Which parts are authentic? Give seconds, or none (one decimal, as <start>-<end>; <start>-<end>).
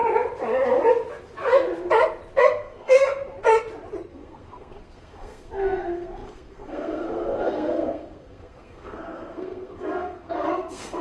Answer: 0.0-2.4; 3.0-4.1